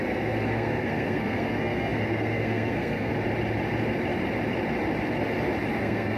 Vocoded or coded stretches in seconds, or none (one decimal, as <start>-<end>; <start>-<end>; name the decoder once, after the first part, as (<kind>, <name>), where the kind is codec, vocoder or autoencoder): 0.0-3.1 (codec, SNAC); 5.7-6.2